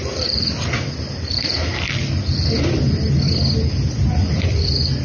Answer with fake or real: real